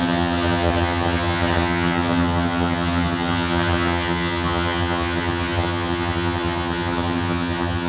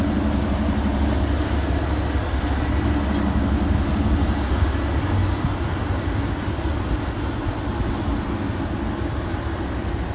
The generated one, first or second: first